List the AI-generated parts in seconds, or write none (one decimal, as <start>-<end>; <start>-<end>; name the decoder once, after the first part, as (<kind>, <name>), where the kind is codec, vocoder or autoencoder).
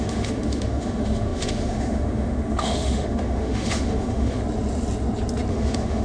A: 0.0-4.4 (autoencoder, DAC-VAE); 5.5-6.0